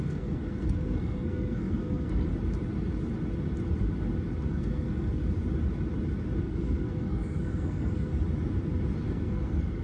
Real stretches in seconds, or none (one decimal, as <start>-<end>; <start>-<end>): 2.3-4.5; 5.2-6.4; 8.1-9.0